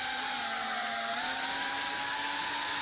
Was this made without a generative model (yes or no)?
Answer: yes